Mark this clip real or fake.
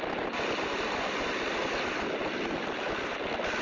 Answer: real